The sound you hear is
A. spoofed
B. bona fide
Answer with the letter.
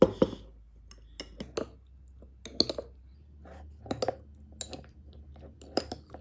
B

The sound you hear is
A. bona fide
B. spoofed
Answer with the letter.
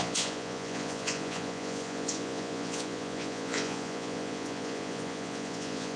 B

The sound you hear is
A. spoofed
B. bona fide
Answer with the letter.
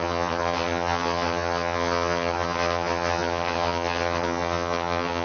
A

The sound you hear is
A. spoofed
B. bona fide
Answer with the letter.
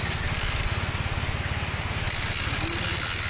B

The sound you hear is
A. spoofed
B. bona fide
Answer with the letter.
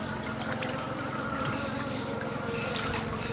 B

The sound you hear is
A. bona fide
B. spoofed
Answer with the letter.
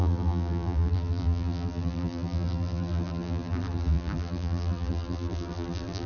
B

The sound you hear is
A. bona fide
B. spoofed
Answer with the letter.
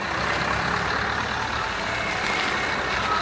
A